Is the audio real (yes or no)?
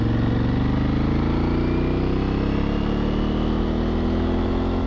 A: yes